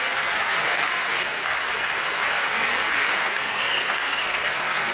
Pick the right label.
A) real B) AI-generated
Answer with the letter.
B